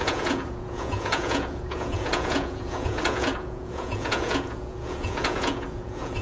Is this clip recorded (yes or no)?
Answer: no